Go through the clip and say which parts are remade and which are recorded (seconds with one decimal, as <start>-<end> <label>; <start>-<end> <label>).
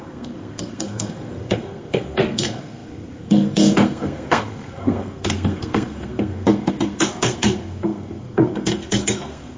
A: 0.0-9.6 remade